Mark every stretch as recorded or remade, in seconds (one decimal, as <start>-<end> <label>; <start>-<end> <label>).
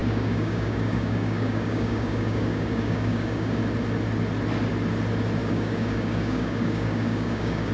0.0-3.6 remade; 3.6-5.4 recorded; 5.4-7.7 remade